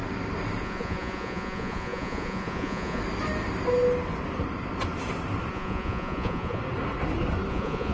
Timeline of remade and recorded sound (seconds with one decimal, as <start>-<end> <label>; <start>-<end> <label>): 0.0-0.6 recorded; 0.6-3.0 remade; 3.0-5.5 recorded; 5.5-6.6 remade; 6.6-7.5 recorded; 7.5-7.9 remade